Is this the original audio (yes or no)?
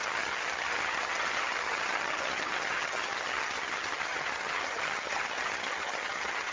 no